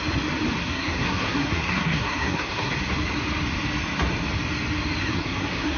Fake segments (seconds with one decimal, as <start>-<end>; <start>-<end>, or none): 0.6-2.7; 5.0-5.8